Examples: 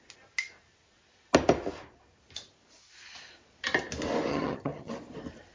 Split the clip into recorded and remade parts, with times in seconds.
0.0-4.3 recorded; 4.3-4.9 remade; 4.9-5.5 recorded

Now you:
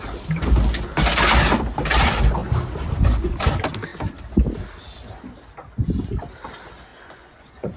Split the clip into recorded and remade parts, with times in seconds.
0.0-6.9 recorded; 6.9-7.8 remade

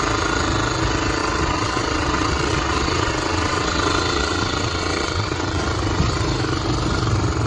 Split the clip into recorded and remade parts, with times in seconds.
0.0-1.2 recorded; 1.2-5.6 remade; 5.6-7.5 recorded

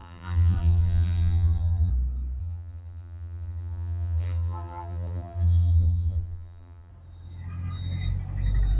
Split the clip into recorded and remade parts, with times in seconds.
0.0-1.9 remade; 1.9-2.4 recorded; 2.4-6.9 remade; 6.9-8.8 recorded

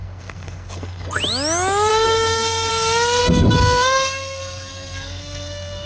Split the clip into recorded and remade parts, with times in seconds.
0.0-1.2 remade; 1.2-1.9 recorded; 1.9-2.7 remade; 2.7-3.2 recorded; 3.2-5.9 remade

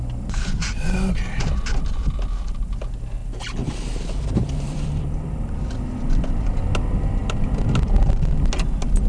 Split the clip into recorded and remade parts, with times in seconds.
0.0-3.2 recorded; 3.2-6.0 remade; 6.0-7.2 recorded; 7.2-8.3 remade; 8.3-9.1 recorded

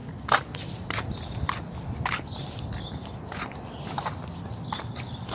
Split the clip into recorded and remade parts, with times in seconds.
0.0-5.3 recorded

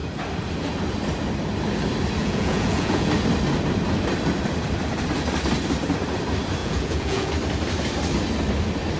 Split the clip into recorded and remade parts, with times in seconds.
0.0-2.2 recorded; 2.2-3.1 remade; 3.1-6.6 recorded; 6.6-7.3 remade; 7.3-9.0 recorded